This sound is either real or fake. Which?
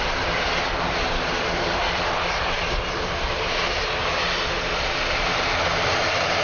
fake